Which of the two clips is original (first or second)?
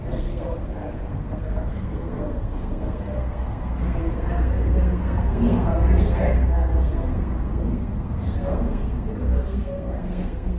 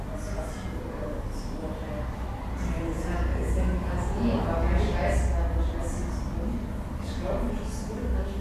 second